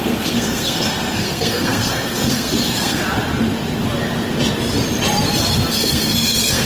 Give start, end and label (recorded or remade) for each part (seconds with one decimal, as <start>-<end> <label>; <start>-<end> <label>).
0.0-3.0 remade; 3.0-5.7 recorded; 5.7-6.6 remade